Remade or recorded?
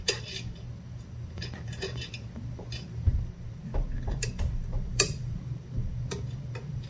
remade